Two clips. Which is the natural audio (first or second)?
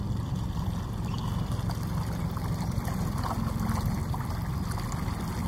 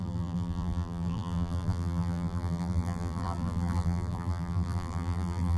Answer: first